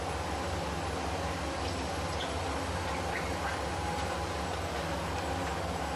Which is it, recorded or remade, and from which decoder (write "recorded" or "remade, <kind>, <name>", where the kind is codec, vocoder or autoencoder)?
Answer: recorded